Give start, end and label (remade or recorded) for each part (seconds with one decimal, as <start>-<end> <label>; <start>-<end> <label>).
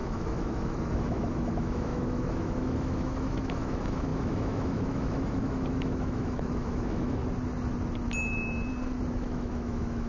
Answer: 0.0-7.2 remade; 7.2-9.1 recorded; 9.1-10.1 remade